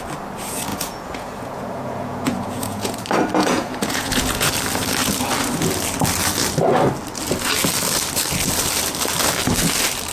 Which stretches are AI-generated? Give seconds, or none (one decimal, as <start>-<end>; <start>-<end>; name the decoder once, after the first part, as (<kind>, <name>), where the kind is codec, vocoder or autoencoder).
0.7-3.0 (vocoder, Vocos); 3.4-4.5